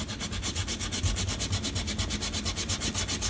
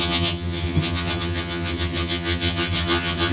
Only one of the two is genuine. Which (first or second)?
first